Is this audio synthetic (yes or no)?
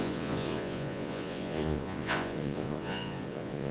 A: yes